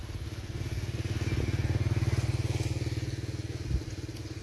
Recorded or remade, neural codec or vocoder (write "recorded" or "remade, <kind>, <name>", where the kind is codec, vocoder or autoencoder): recorded